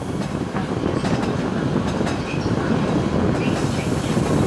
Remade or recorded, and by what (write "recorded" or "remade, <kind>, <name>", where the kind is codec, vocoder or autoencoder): recorded